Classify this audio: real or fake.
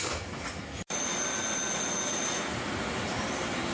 real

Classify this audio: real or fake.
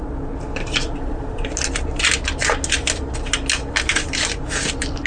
real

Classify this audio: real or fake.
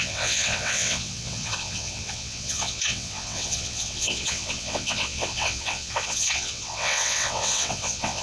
fake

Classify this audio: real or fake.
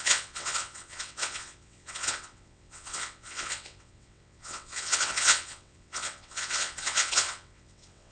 fake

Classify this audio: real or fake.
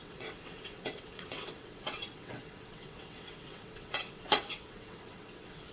fake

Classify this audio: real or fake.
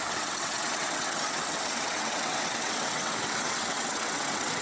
fake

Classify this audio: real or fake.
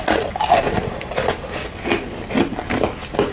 real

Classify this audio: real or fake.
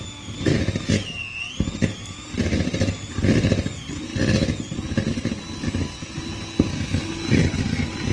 real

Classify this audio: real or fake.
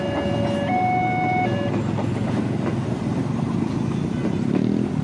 real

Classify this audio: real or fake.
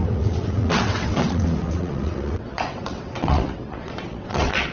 fake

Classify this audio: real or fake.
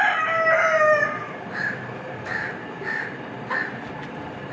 real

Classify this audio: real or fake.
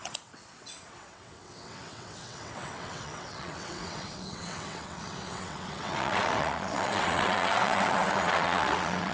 fake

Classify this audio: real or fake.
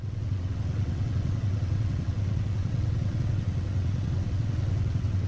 fake